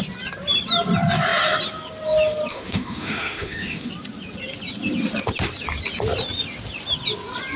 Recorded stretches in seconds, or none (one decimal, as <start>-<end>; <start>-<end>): 0.0-2.5; 3.9-7.6